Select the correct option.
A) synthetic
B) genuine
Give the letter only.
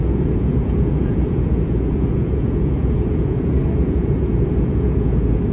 A